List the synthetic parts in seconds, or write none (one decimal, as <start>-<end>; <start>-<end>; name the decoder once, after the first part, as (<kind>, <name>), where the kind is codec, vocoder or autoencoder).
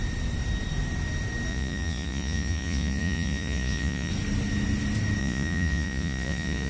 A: 1.5-4.1 (vocoder, Vocos); 5.2-6.7